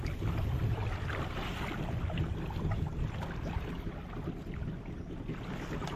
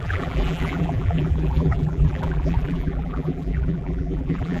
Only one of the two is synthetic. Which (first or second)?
second